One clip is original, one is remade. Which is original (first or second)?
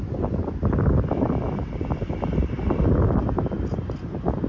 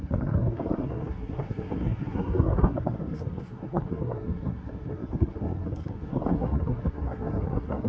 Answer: first